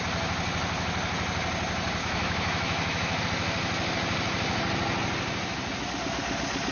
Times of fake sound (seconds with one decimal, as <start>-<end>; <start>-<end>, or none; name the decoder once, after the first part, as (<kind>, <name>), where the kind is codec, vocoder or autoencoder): 2.0-3.2 (autoencoder, DAC-VAE)